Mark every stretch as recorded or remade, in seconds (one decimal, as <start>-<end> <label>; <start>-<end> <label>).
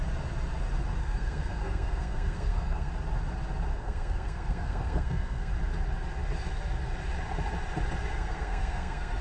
0.0-1.0 recorded; 1.0-2.9 remade; 2.9-3.7 recorded; 3.7-5.5 remade; 5.5-8.1 recorded; 8.1-9.2 remade